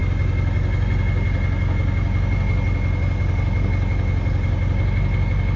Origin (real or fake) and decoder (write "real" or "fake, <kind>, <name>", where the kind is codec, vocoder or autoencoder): real